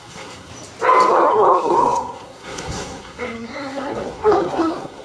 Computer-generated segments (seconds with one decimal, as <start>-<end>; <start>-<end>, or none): 0.0-0.5; 1.1-5.0